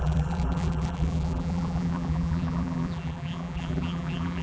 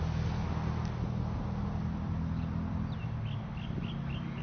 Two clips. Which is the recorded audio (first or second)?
second